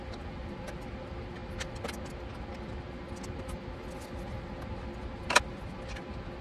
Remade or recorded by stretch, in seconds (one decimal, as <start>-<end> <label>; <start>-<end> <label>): 0.0-6.4 recorded